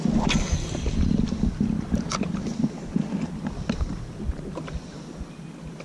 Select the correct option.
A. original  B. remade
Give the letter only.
A